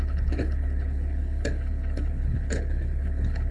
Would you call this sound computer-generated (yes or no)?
yes